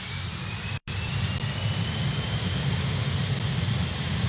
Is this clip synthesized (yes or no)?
no